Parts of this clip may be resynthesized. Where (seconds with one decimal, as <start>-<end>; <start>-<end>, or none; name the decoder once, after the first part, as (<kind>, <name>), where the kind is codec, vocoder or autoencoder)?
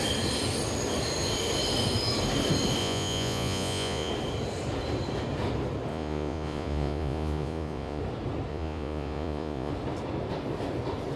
2.8-4.1 (vocoder, Vocos); 5.9-8.0; 8.5-9.7